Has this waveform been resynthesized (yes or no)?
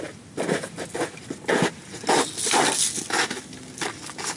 no